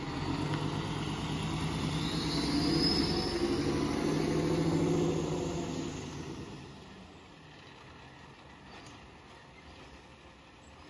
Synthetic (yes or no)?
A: no